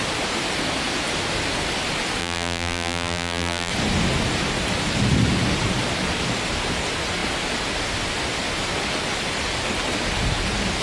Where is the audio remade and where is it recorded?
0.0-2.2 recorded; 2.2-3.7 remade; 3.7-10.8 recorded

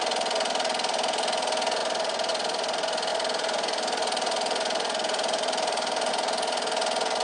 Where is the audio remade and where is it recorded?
0.0-3.1 recorded; 3.1-6.1 remade; 6.1-7.2 recorded

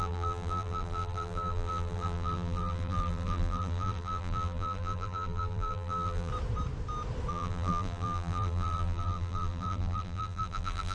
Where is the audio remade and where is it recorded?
0.0-6.3 remade; 6.3-7.3 recorded; 7.3-10.9 remade

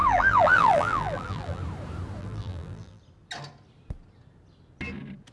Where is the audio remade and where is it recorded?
0.0-1.6 remade; 1.6-2.2 recorded; 2.2-3.0 remade; 3.0-5.3 recorded

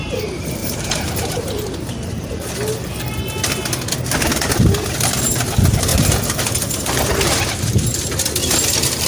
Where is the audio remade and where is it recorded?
0.0-0.6 recorded; 0.6-2.1 remade; 2.1-9.1 recorded

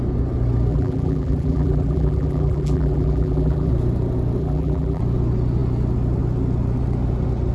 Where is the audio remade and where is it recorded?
0.0-0.7 recorded; 0.7-3.7 remade; 3.7-4.4 recorded; 4.4-5.0 remade; 5.0-7.5 recorded